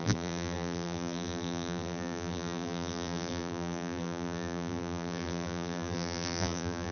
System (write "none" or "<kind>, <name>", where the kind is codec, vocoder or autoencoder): vocoder, BigVGAN v2